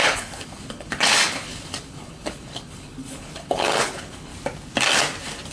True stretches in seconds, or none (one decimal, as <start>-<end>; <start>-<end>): 4.3-5.5